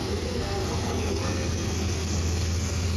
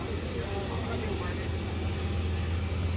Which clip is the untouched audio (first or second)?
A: second